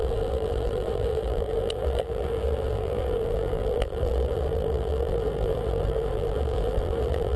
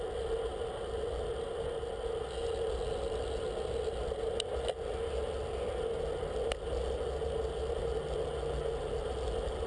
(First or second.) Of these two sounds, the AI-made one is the first